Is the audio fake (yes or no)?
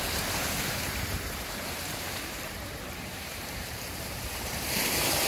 yes